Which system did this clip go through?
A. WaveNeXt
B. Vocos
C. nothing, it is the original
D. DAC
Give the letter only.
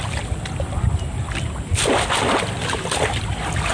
C